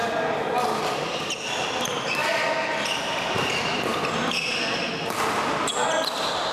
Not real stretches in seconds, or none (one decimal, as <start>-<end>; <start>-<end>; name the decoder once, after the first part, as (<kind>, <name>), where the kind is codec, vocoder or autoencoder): none